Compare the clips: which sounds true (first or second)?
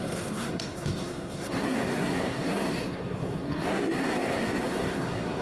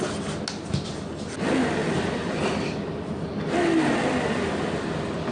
second